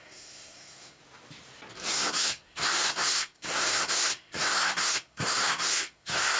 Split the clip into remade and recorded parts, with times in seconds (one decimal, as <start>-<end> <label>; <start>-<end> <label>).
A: 0.0-1.0 remade; 1.0-1.9 recorded; 1.9-6.4 remade